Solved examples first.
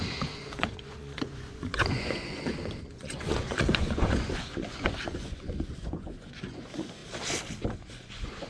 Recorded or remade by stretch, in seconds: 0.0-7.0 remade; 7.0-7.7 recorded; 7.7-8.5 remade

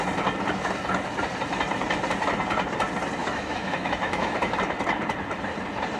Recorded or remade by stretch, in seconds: 0.0-3.2 recorded; 3.2-4.6 remade; 4.6-6.0 recorded

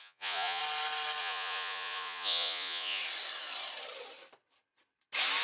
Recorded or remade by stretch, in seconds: 0.0-0.6 remade; 0.6-1.2 recorded; 1.2-3.0 remade; 3.0-5.4 recorded